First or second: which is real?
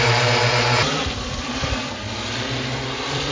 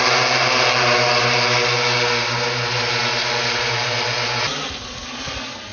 second